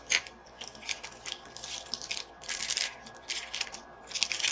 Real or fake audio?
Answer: fake